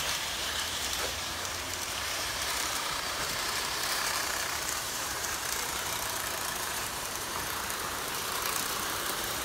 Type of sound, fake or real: fake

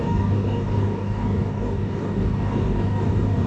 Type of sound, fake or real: fake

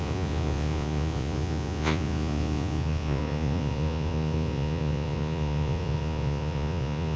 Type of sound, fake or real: fake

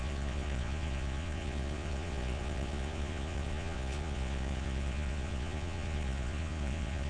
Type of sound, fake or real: fake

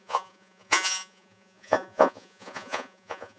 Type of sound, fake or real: fake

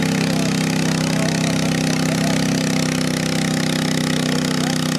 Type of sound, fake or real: real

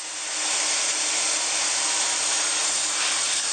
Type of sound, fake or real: real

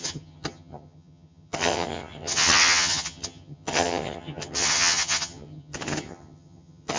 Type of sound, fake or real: fake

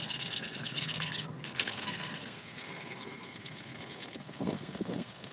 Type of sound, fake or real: fake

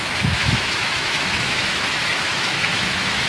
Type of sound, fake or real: fake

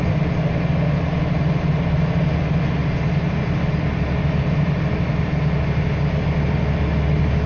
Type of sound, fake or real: real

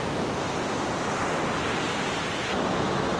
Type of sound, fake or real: real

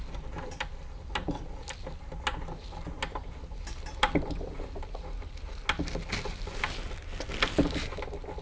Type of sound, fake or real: real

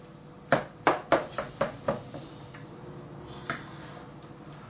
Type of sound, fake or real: real